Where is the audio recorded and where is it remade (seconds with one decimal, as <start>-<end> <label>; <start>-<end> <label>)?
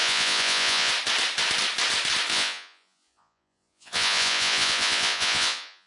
0.0-0.9 remade; 0.9-2.3 recorded; 2.3-5.9 remade